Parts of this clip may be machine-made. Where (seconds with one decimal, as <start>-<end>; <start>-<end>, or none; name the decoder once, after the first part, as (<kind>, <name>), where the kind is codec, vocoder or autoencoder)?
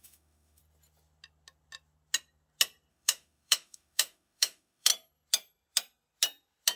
0.0-0.6 (autoencoder, DAC-VAE); 2.9-4.9